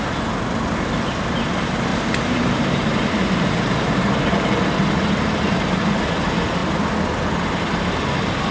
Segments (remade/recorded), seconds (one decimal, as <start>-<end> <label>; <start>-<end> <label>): 0.0-1.9 recorded; 1.9-6.0 remade; 6.0-8.5 recorded